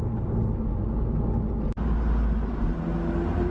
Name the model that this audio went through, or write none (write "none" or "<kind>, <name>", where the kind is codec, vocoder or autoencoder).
none